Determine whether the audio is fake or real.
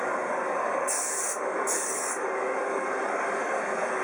fake